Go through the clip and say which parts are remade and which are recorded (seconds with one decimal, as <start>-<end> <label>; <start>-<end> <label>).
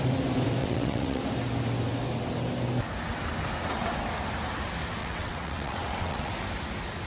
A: 0.0-0.6 recorded; 0.6-1.2 remade; 1.2-5.0 recorded; 5.0-6.3 remade; 6.3-7.1 recorded